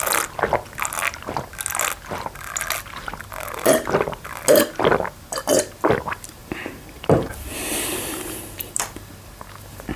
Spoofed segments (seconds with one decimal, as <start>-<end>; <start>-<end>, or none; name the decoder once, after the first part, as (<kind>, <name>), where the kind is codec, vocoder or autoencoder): 6.4-9.1 (vocoder, BigVGAN v2)